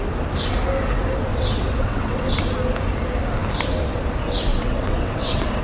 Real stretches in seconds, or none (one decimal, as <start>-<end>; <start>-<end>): 0.0-1.3; 2.2-4.5